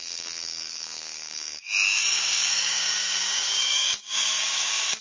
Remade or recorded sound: remade